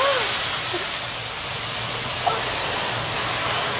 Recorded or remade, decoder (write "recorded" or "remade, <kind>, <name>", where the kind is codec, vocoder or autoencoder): recorded